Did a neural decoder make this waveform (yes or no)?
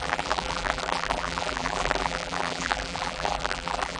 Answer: yes